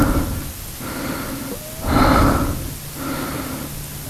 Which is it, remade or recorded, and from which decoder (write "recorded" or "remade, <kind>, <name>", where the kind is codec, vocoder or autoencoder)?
recorded